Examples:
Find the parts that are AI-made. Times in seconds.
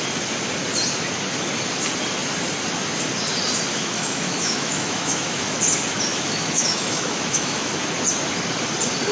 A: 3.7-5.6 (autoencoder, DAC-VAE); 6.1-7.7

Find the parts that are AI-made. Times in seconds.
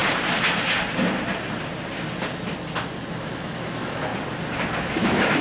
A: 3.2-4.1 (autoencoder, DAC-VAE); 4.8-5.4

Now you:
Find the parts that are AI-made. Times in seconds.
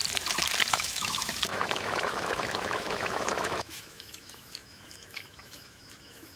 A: 0.7-6.4 (autoencoder, DAC-VAE)